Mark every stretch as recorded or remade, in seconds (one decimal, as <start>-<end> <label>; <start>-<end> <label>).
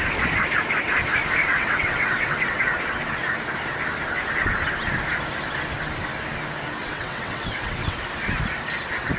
0.0-1.5 recorded; 1.5-2.6 remade; 2.6-6.8 recorded; 6.8-8.0 remade; 8.0-9.2 recorded